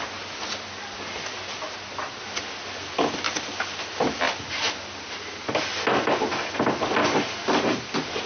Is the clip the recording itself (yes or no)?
yes